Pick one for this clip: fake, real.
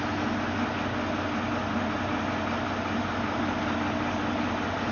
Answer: real